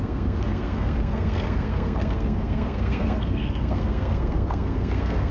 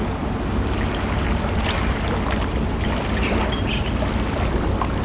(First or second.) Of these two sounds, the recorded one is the second